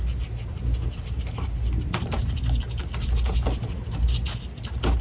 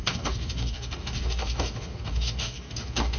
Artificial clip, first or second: second